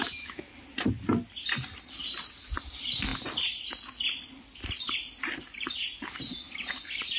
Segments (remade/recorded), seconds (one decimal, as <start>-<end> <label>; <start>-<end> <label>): 0.0-0.5 remade; 0.5-7.2 recorded